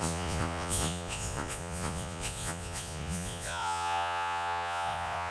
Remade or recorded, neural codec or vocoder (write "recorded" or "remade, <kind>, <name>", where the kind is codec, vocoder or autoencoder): remade, vocoder, Vocos